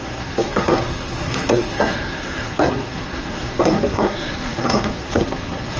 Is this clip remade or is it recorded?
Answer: remade